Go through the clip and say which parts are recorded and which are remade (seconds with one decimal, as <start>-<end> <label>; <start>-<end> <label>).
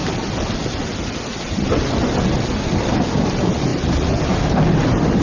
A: 0.0-5.2 recorded